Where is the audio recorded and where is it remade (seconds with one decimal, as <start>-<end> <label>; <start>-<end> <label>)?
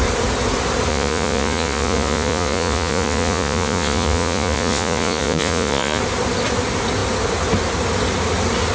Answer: 0.0-0.9 recorded; 0.9-6.0 remade; 6.0-8.7 recorded